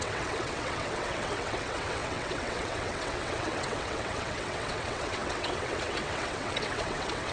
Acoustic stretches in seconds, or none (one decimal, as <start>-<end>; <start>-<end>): none